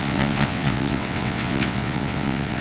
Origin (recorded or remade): remade